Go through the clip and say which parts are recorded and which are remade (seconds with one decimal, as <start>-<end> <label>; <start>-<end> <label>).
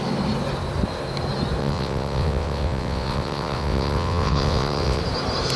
0.0-1.6 recorded; 1.6-5.0 remade; 5.0-5.6 recorded